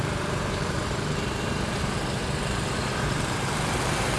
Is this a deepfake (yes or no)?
yes